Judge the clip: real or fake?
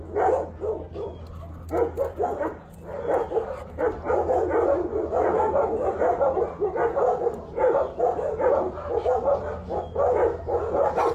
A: real